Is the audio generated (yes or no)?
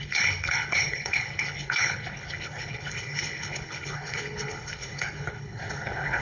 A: yes